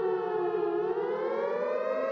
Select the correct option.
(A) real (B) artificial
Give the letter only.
A